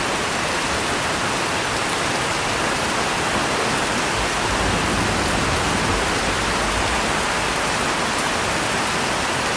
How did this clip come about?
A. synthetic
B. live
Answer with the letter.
B